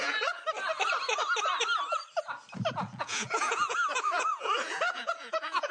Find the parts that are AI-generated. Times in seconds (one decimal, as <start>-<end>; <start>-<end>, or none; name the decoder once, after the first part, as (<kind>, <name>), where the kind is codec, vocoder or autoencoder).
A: 0.0-0.4 (vocoder, Vocos); 3.0-5.7